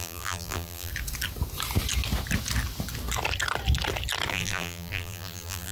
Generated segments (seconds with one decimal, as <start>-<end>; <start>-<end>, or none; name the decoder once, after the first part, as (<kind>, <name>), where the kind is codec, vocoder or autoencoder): 0.0-0.9 (vocoder, BigVGAN v2); 4.3-5.7